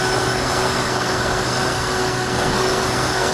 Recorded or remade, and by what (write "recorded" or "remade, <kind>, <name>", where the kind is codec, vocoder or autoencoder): remade, codec, SNAC